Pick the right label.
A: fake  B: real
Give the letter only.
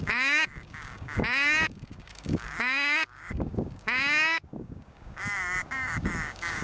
A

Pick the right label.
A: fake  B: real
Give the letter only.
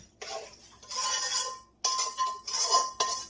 B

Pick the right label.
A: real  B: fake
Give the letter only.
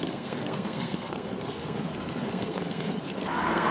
B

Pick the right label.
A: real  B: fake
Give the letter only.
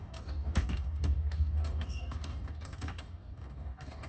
B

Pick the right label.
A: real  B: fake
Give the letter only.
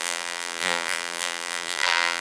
B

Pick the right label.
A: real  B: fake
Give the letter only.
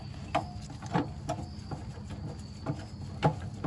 A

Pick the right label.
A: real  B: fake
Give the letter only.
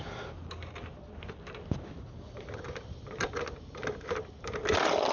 A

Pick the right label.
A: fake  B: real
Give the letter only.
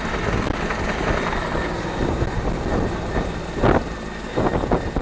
B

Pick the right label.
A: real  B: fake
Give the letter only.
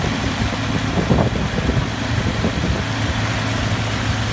A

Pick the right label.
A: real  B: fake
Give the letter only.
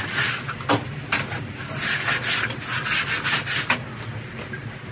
A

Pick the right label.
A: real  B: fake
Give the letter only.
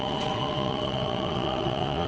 B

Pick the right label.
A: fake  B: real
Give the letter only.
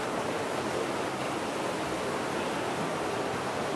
B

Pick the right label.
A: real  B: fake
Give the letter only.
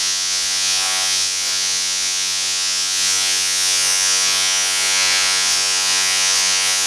B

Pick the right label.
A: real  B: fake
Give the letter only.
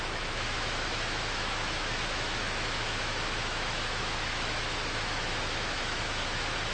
B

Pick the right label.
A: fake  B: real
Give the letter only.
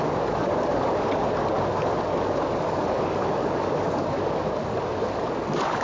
A